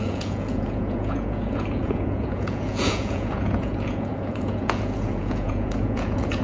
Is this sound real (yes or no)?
no